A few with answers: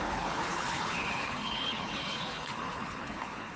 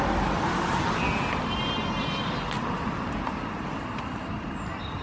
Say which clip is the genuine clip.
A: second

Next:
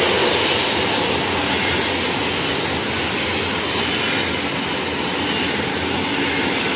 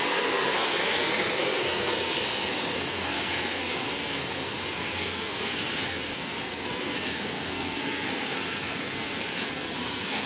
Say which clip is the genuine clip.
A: first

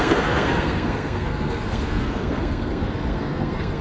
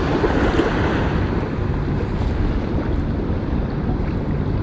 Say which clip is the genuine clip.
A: second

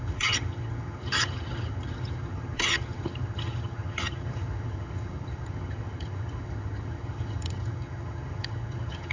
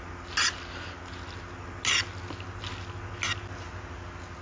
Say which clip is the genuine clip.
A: second